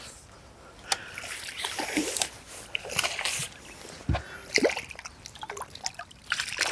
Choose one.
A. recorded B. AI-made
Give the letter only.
A